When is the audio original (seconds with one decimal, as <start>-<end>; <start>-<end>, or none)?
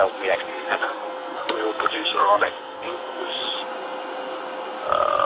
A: 0.0-0.5; 3.4-5.3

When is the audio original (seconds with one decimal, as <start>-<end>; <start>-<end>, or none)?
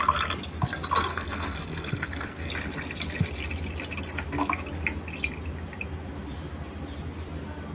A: 0.0-1.1; 2.5-7.7